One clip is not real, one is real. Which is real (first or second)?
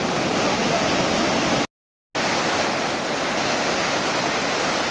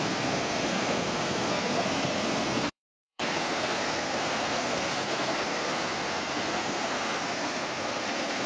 first